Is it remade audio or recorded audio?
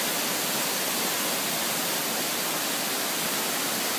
recorded